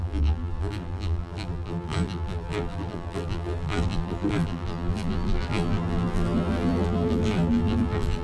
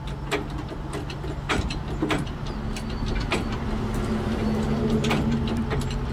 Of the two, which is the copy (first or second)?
first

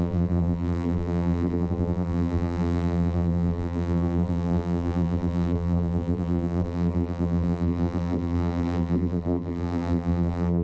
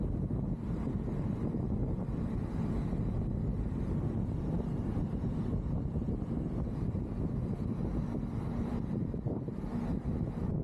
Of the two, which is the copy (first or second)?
first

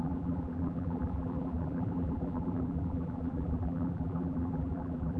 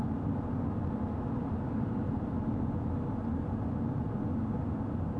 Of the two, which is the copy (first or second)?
first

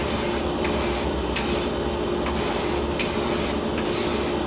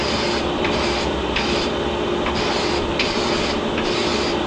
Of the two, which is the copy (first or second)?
second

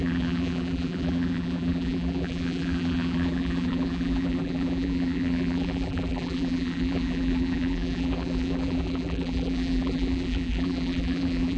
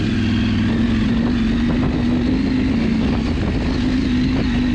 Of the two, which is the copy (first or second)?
first